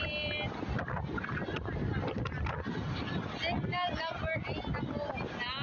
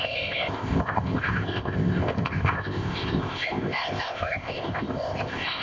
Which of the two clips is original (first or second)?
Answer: first